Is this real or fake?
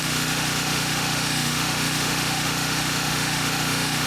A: fake